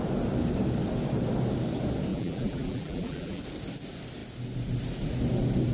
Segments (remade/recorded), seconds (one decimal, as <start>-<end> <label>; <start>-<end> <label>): 0.0-2.1 recorded; 2.1-3.4 remade; 3.4-5.7 recorded

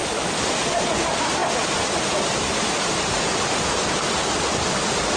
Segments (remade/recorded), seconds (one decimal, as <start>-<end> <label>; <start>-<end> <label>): 0.0-0.8 remade; 0.8-1.4 recorded; 1.4-4.2 remade; 4.2-5.2 recorded

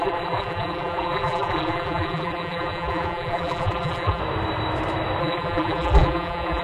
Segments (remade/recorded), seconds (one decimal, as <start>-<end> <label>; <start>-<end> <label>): 0.0-4.2 remade; 4.2-5.2 recorded; 5.2-6.6 remade

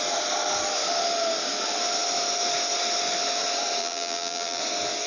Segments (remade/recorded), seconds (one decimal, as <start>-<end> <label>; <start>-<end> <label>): 0.0-3.8 recorded; 3.8-4.6 remade; 4.6-5.1 recorded

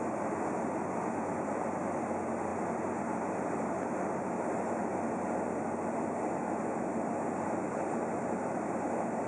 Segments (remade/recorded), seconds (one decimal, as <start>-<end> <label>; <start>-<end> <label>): 0.0-7.6 recorded; 7.6-8.4 remade; 8.4-9.3 recorded

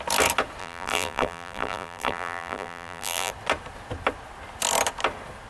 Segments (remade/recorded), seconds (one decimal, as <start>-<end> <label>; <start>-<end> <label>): 0.0-0.6 recorded; 0.6-3.3 remade; 3.3-5.5 recorded

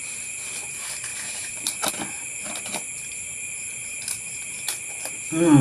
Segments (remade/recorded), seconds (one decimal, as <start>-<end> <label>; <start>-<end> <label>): 0.0-1.1 recorded; 1.1-1.9 remade; 1.9-3.8 recorded; 3.8-4.6 remade; 4.6-5.6 recorded